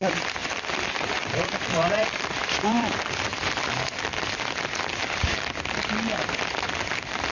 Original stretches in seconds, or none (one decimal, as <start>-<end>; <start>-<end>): 3.3-6.2